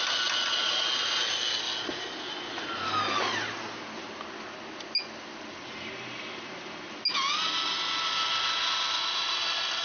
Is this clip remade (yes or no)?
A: no